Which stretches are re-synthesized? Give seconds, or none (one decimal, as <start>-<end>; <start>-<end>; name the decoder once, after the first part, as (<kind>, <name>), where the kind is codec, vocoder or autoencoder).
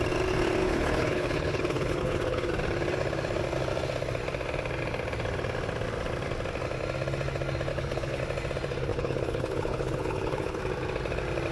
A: 0.6-2.5 (codec, HILCodec); 7.7-8.2; 8.9-10.6